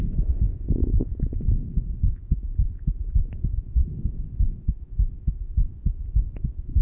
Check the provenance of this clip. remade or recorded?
remade